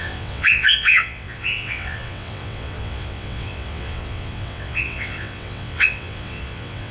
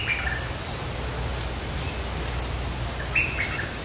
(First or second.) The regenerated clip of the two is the first